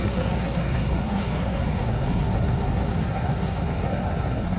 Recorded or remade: remade